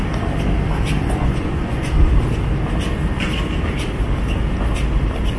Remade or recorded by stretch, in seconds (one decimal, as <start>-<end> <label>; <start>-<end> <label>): 0.0-1.0 recorded; 1.0-1.9 remade; 1.9-5.4 recorded